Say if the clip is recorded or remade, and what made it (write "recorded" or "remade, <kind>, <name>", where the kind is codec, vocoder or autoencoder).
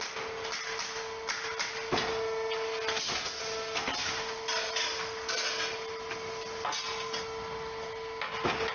recorded